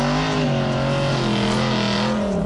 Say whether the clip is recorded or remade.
recorded